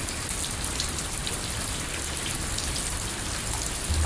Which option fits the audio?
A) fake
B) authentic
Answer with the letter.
A